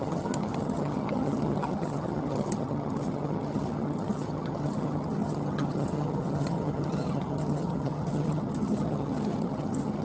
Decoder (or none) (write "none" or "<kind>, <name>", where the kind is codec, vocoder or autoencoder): vocoder, HiFi-GAN